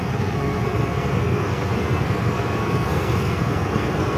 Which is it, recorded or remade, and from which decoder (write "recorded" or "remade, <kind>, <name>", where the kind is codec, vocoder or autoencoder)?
remade, codec, SNAC